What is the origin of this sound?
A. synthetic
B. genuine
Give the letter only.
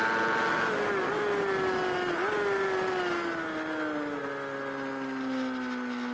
B